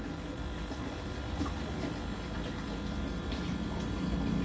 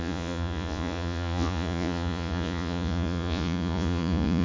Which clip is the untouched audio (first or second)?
first